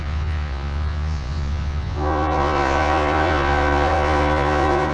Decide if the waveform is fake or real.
fake